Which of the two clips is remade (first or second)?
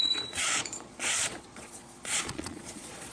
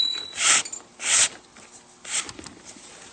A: first